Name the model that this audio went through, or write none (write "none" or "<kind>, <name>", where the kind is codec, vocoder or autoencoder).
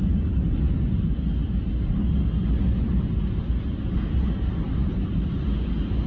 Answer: none